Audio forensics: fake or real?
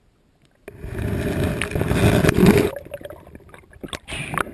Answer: real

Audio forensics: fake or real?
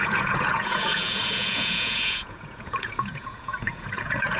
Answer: fake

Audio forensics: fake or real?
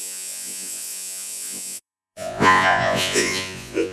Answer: fake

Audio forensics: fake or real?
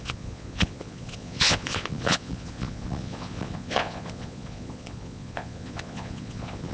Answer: fake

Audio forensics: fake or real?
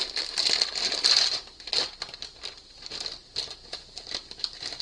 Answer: real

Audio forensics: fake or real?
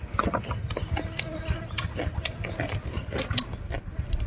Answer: real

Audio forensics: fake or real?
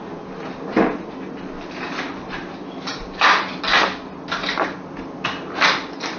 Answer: real